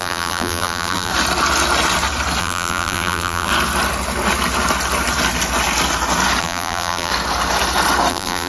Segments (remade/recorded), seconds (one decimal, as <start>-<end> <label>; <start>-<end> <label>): 0.0-1.1 remade; 1.1-2.4 recorded; 2.4-3.5 remade; 3.5-6.4 recorded; 6.4-7.1 remade; 7.1-8.1 recorded; 8.1-8.5 remade